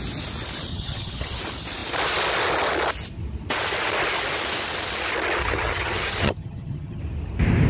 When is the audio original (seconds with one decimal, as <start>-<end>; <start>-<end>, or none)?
0.0-0.7; 1.4-5.4; 7.0-7.7